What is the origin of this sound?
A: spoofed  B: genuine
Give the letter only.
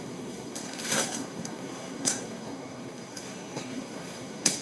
A